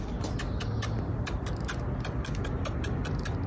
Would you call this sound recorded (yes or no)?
yes